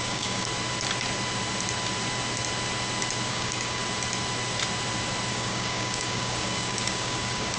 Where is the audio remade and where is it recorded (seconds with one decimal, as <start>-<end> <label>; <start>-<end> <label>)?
0.0-0.5 remade; 0.5-3.3 recorded; 3.3-3.8 remade; 3.8-5.3 recorded; 5.3-7.6 remade